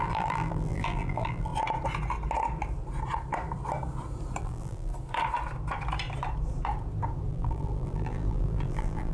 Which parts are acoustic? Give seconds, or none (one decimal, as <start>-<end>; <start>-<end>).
1.5-4.4; 4.9-7.3